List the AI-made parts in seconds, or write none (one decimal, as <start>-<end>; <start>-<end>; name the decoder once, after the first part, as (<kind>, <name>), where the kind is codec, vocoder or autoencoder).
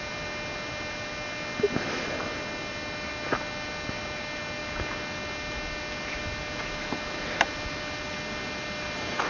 none